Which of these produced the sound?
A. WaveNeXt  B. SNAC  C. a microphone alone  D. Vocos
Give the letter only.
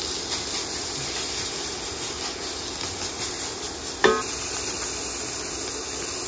C